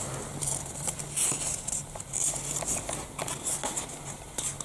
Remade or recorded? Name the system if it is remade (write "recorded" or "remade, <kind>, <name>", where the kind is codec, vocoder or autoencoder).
recorded